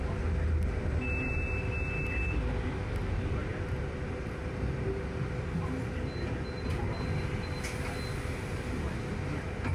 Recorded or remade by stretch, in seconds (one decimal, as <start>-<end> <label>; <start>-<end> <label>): 0.0-9.7 recorded